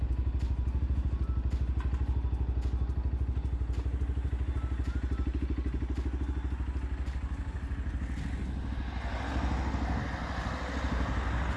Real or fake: real